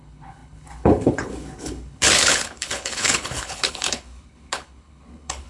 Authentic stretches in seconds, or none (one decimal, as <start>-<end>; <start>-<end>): none